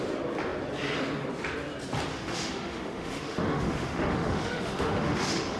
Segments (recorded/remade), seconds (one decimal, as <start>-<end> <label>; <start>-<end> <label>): 0.0-2.1 recorded; 2.1-5.6 remade